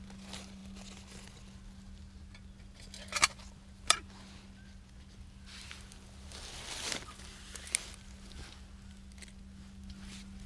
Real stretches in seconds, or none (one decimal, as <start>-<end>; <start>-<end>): 0.0-10.5